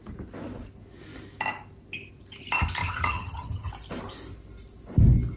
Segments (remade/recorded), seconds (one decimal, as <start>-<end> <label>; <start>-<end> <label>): 0.0-2.8 recorded; 2.8-3.7 remade; 3.7-5.4 recorded